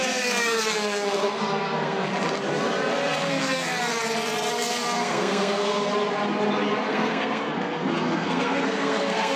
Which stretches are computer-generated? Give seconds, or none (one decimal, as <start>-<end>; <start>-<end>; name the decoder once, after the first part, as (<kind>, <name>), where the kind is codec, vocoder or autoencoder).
0.0-2.1 (codec, SNAC); 3.2-3.7; 4.5-5.9; 6.9-9.4